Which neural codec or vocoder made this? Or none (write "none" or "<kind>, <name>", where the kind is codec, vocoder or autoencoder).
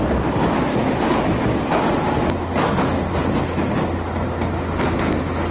none